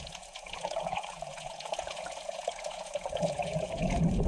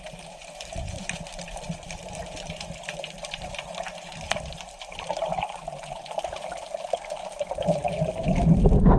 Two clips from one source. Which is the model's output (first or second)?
first